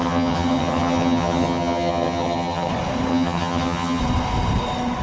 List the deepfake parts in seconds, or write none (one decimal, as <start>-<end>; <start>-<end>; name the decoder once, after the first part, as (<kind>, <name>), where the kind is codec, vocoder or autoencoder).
0.0-2.7 (vocoder, HiFi-GAN); 3.1-4.0